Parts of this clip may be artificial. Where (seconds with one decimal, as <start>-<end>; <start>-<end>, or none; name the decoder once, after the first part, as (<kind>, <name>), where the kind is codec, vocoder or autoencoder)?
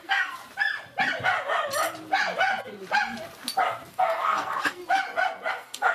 0.0-0.4 (codec, SNAC); 3.9-4.8; 5.5-5.9